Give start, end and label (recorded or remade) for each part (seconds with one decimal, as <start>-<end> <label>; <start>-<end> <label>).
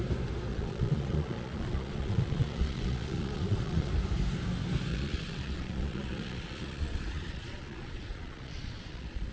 0.0-0.5 recorded; 0.5-3.9 remade; 3.9-4.9 recorded; 4.9-9.3 remade